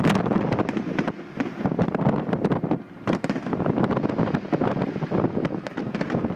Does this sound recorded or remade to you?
recorded